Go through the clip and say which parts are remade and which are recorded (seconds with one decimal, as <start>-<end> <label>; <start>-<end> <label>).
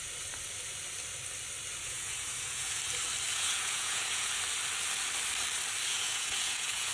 0.0-1.8 recorded; 1.8-2.8 remade; 2.8-3.3 recorded; 3.3-4.3 remade; 4.3-5.9 recorded; 5.9-6.9 remade